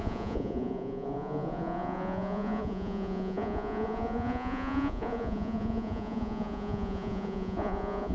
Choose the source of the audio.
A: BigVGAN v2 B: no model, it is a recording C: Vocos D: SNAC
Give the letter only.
C